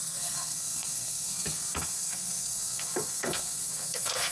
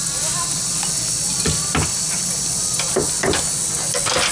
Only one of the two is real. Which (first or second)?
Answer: second